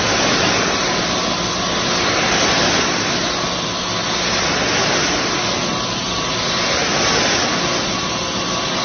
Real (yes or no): yes